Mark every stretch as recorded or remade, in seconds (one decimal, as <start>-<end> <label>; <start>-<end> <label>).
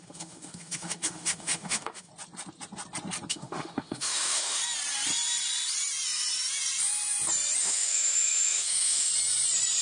0.0-2.1 remade; 2.1-3.3 recorded; 3.3-4.6 remade; 4.6-7.6 recorded; 7.6-9.1 remade; 9.1-9.8 recorded